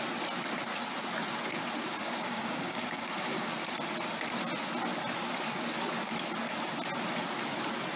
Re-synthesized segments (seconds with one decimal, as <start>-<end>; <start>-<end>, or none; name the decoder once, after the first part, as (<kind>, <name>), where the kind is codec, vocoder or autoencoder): 2.0-3.5 (codec, DAC)